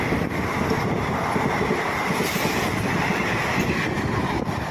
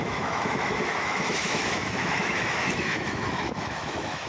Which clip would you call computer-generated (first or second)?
second